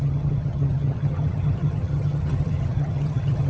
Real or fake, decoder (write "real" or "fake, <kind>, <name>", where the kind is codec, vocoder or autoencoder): fake, vocoder, HiFi-GAN